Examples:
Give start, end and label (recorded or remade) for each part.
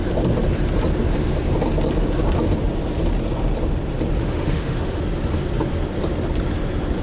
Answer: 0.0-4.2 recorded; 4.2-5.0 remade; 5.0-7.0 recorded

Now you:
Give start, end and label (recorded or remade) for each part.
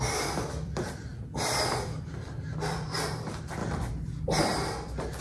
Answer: 0.0-3.6 remade; 3.6-4.4 recorded; 4.4-5.2 remade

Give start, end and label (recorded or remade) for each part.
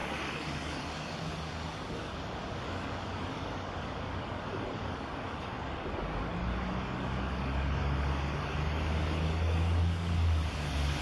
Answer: 0.0-11.0 remade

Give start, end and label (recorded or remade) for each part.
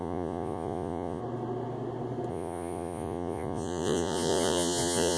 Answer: 0.0-1.2 remade; 1.2-2.3 recorded; 2.3-5.2 remade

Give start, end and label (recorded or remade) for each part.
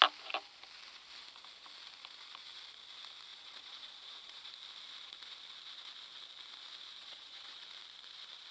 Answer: 0.0-3.3 recorded; 3.3-4.5 remade; 4.5-7.0 recorded; 7.0-7.6 remade; 7.6-8.5 recorded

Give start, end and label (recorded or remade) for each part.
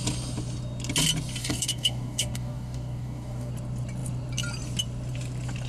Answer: 0.0-1.4 recorded; 1.4-3.5 remade; 3.5-5.7 recorded